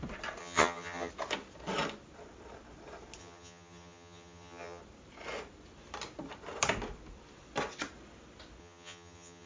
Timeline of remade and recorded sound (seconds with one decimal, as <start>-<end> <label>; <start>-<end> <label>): 0.0-0.4 recorded; 0.4-1.1 remade; 1.1-3.2 recorded; 3.2-4.8 remade; 4.8-8.6 recorded; 8.6-9.5 remade